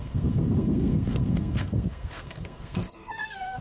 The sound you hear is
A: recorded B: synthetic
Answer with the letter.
B